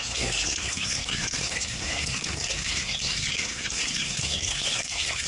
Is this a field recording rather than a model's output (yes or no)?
no